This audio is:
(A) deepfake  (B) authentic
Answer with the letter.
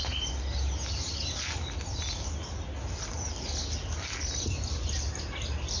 B